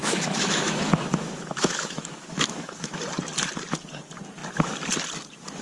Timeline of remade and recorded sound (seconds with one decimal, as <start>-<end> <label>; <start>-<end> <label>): 0.0-3.0 remade; 3.0-5.6 recorded